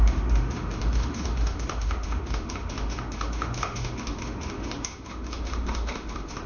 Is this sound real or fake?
fake